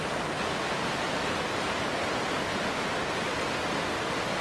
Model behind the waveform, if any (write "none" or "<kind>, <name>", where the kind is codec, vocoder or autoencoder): none